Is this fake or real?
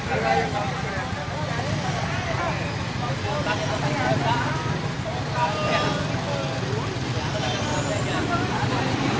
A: real